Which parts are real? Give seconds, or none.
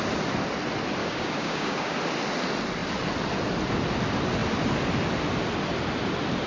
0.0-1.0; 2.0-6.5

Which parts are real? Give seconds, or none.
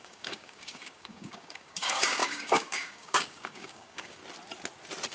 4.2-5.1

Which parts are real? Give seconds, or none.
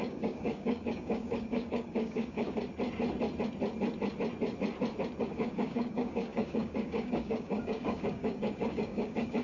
2.7-5.2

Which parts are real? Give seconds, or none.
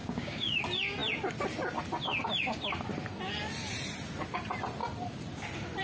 0.6-5.8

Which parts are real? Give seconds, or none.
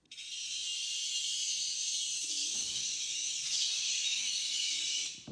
0.0-2.4; 4.8-5.3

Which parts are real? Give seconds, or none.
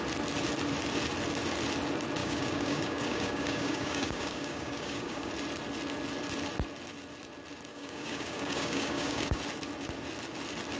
0.0-2.2; 5.3-7.7; 9.4-10.8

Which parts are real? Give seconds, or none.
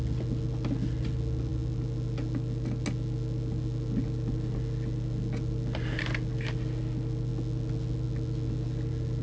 0.0-9.2